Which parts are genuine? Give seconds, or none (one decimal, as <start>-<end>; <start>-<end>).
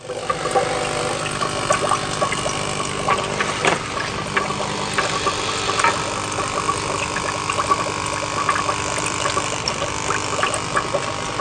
0.0-11.4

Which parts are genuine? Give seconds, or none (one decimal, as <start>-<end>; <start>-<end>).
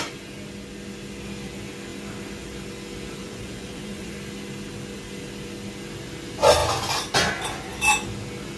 0.0-3.2; 4.1-8.6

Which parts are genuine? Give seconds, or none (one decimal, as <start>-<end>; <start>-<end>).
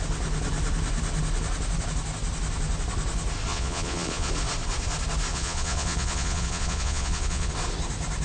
0.0-3.5; 4.3-5.3; 7.5-8.2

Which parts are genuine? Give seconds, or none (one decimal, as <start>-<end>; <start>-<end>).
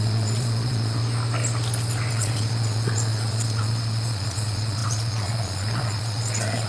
1.0-2.1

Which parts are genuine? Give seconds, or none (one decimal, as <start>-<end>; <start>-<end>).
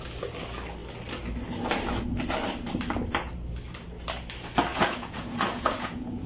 0.0-4.7